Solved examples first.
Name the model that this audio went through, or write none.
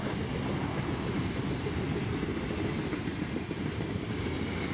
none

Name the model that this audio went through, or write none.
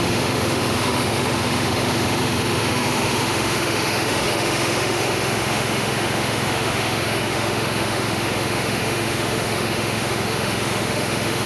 autoencoder, DAC-VAE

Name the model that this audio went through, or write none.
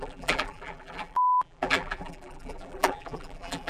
vocoder, BigVGAN v2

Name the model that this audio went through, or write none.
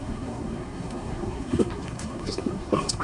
codec, SNAC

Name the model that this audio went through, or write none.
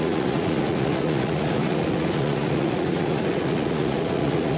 vocoder, Vocos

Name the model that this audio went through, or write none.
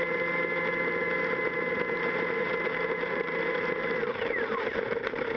vocoder, BigVGAN v2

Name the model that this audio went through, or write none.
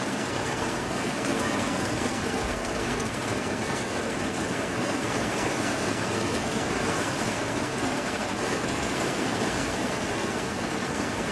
codec, SNAC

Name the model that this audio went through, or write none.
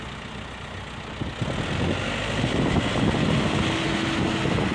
none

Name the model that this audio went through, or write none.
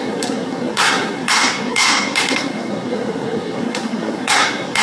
codec, SNAC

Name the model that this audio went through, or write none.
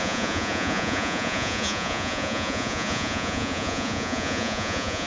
vocoder, Vocos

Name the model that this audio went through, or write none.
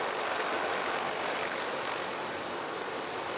none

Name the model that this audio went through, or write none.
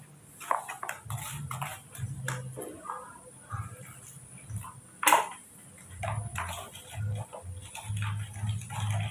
none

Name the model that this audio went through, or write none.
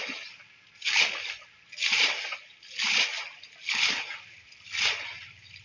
none